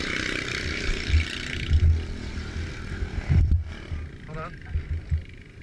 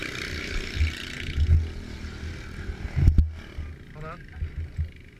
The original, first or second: second